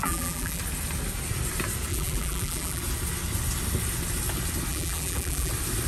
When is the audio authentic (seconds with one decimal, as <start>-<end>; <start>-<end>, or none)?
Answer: 0.6-1.9; 2.8-4.7; 5.5-5.9